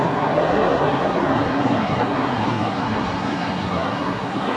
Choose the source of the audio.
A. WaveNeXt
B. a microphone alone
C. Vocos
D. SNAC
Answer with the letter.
D